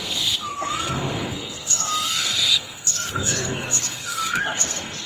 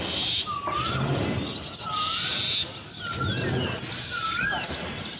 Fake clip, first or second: first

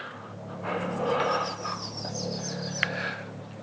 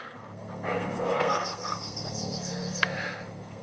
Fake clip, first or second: second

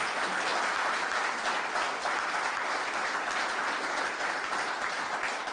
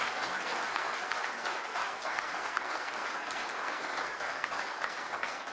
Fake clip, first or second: second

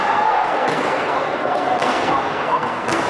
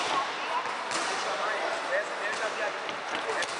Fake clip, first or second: first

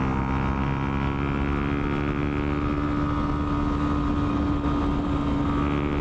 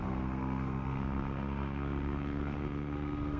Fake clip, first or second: second